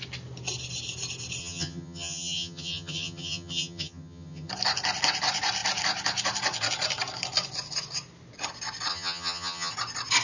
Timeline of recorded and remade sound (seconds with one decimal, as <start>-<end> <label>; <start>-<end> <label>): 0.0-1.4 recorded; 1.4-4.5 remade; 4.5-8.9 recorded; 8.9-9.7 remade; 9.7-10.2 recorded